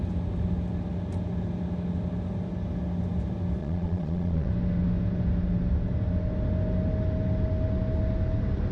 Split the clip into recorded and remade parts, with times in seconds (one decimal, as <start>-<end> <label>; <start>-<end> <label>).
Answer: 0.0-3.6 recorded; 3.6-4.5 remade; 4.5-8.7 recorded